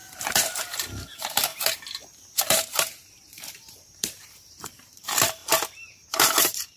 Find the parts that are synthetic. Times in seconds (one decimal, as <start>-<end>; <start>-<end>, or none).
0.0-1.5; 2.4-5.4; 5.9-6.8